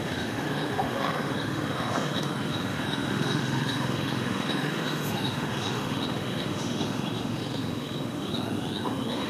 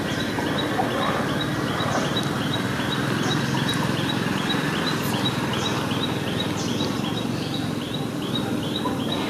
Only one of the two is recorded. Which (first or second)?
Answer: second